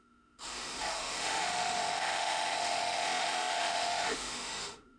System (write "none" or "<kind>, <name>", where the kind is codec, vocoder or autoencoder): autoencoder, DAC-VAE